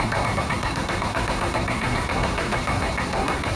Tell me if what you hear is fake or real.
fake